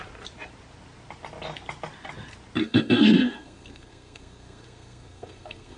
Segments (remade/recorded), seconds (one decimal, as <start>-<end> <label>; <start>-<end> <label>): 0.0-2.6 recorded; 2.6-5.8 remade